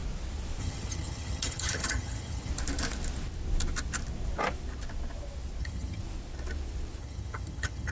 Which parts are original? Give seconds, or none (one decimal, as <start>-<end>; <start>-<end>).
0.0-0.6; 2.5-5.6; 6.0-7.0